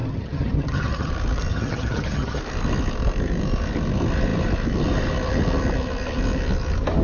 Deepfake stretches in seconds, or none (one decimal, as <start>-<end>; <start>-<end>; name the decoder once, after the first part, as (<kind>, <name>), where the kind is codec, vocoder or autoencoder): 0.0-1.1 (vocoder, HiFi-GAN); 1.5-2.4